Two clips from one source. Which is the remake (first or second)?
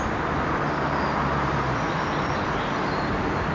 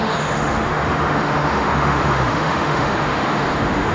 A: second